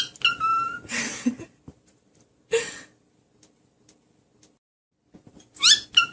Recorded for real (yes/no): yes